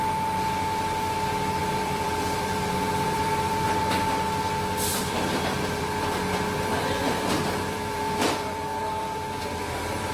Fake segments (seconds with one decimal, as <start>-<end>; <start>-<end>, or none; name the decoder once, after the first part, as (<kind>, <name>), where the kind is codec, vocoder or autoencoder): 1.6-3.8 (vocoder, BigVGAN v2); 4.9-10.1